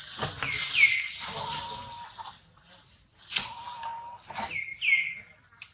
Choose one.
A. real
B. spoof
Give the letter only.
A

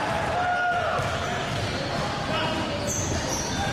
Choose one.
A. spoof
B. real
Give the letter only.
B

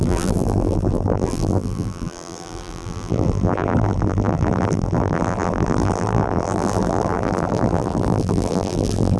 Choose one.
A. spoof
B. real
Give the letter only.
A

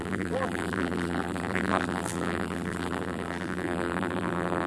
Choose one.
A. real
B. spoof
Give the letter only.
B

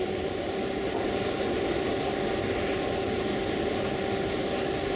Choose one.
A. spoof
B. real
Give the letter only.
B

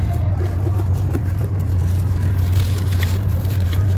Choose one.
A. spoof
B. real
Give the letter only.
A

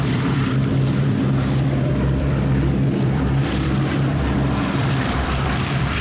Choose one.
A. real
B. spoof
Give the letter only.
B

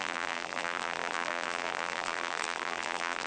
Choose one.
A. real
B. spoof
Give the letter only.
B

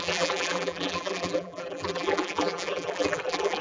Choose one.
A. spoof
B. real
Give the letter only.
A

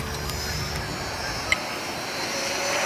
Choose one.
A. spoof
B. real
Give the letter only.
B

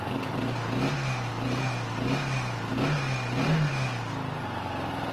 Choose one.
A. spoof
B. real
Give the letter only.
B